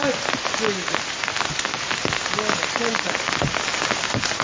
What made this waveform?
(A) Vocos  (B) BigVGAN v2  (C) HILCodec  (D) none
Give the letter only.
D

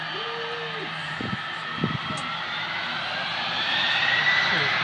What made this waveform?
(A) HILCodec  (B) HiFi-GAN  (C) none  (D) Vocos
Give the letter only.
C